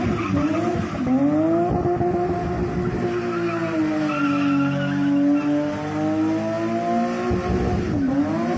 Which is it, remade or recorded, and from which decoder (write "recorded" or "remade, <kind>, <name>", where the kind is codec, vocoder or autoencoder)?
recorded